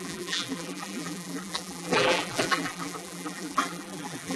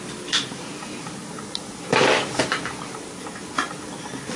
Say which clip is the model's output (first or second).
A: first